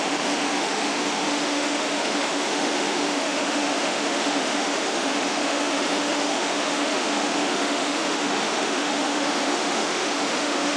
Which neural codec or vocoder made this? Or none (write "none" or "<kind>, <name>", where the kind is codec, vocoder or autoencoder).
autoencoder, DAC-VAE